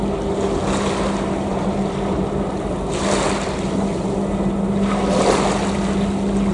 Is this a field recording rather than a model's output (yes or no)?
yes